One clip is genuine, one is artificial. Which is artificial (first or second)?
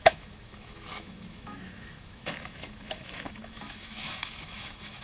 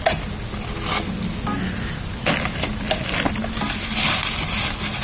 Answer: first